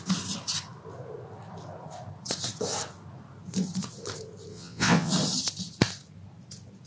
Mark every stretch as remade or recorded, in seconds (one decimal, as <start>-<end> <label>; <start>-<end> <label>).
0.0-4.5 recorded; 4.5-5.1 remade; 5.1-6.9 recorded